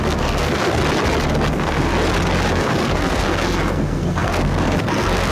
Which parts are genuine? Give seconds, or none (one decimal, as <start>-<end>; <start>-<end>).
0.8-1.5; 1.9-2.5

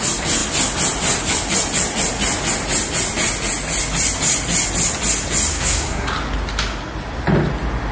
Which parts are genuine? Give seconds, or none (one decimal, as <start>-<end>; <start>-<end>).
0.0-5.5; 6.1-7.9

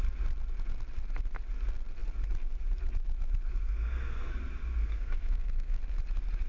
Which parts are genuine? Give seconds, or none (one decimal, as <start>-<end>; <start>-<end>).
0.0-3.5; 4.3-4.8; 5.8-6.5

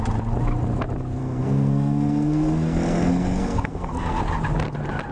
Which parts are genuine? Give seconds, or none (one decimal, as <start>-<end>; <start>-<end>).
0.0-1.2; 4.2-5.1

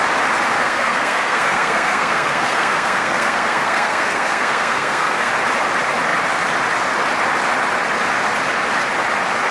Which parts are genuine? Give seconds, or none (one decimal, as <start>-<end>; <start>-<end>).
0.0-0.5; 5.3-9.5